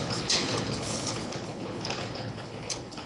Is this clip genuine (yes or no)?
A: no